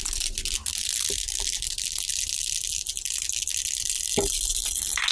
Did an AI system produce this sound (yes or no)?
no